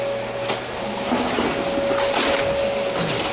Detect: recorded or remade recorded